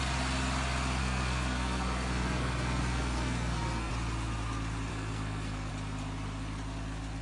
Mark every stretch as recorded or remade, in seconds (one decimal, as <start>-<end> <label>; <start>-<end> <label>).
0.0-1.0 recorded; 1.0-3.9 remade; 3.9-4.9 recorded; 4.9-5.7 remade; 5.7-7.2 recorded